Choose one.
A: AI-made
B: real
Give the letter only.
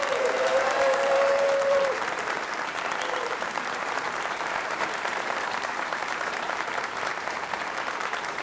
A